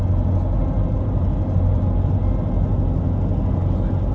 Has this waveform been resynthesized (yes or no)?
no